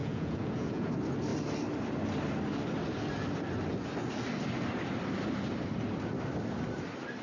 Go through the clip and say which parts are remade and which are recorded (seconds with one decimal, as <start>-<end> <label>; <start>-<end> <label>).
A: 0.0-0.9 remade; 0.9-7.2 recorded